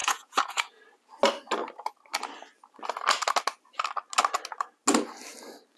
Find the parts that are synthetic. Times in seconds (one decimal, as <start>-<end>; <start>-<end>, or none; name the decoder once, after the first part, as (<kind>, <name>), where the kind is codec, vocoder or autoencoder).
0.0-0.8 (vocoder, Vocos)